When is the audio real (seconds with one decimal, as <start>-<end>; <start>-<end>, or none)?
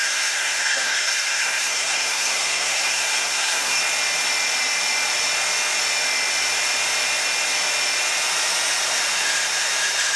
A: 3.8-10.2